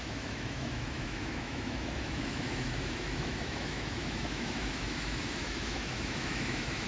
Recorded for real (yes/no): no